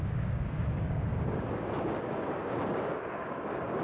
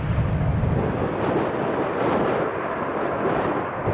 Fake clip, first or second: first